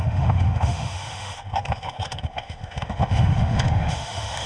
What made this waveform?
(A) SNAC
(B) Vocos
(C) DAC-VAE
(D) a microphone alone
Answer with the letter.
C